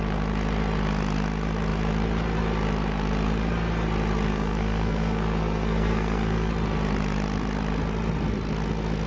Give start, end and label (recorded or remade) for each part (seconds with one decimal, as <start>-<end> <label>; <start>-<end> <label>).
0.0-4.3 recorded; 4.3-6.5 remade; 6.5-9.1 recorded